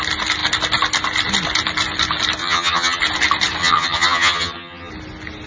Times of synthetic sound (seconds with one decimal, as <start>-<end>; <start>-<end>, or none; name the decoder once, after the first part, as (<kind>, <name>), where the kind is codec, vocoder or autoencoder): 2.4-3.0 (vocoder, HiFi-GAN); 3.6-4.9